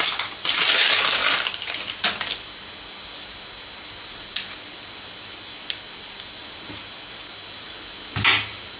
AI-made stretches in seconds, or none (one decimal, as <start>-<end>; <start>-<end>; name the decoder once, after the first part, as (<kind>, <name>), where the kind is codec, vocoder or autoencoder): none